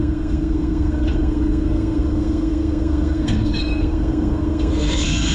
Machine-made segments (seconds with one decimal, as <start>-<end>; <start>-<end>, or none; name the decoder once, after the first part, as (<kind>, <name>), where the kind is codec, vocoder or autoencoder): 0.0-5.3 (codec, SNAC)